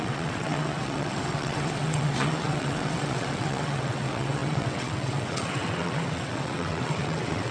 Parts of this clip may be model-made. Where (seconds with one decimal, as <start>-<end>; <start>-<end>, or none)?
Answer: 0.0-7.5